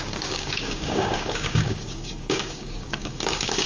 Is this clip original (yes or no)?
no